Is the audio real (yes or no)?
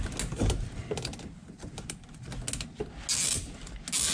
yes